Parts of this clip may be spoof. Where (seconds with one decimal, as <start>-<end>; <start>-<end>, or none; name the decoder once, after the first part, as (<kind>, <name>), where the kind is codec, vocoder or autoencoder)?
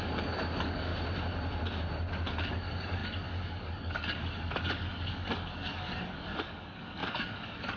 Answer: 0.0-0.9 (codec, DAC); 2.5-7.8